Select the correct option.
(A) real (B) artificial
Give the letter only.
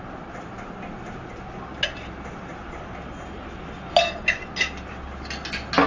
A